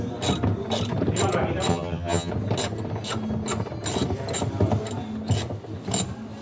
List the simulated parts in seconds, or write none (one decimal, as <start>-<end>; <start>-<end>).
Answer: 1.7-2.3